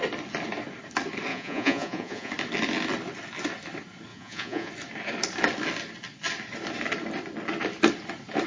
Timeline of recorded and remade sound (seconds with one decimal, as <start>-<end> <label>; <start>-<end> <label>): 0.0-1.3 recorded; 1.3-2.3 remade; 2.3-4.1 recorded; 4.1-4.7 remade; 4.7-8.5 recorded